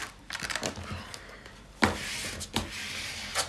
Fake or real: real